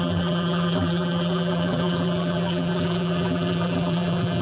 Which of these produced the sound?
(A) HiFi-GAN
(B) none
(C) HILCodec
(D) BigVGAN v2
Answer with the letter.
D